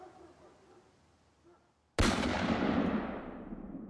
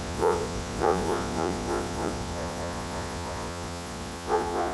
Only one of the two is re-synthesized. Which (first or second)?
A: second